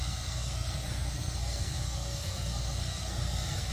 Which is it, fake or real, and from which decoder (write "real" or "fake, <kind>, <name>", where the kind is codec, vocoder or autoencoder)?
fake, codec, SNAC